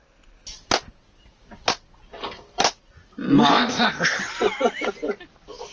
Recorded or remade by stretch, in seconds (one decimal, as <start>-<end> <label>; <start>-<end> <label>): 0.0-3.5 recorded; 3.5-4.2 remade; 4.2-5.7 recorded